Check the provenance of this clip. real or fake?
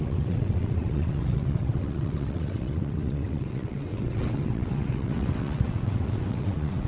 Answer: fake